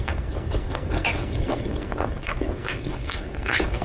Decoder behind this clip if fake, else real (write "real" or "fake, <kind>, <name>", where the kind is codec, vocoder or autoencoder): fake, codec, SNAC